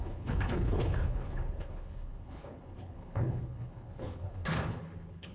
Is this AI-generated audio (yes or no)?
yes